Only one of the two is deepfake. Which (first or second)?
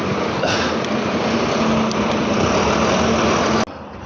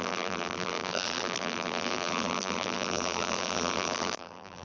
second